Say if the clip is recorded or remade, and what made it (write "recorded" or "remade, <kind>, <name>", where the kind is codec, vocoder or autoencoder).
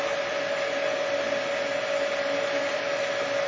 recorded